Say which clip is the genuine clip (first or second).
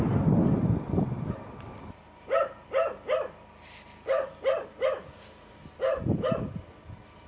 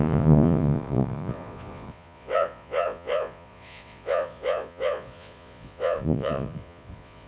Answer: first